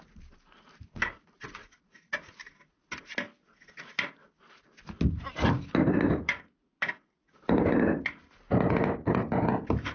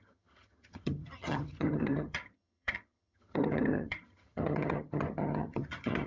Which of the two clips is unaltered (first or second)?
first